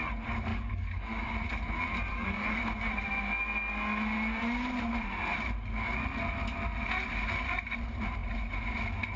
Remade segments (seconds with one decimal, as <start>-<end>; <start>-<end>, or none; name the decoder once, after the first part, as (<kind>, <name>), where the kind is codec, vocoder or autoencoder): 0.5-1.3 (codec, DAC); 2.1-2.6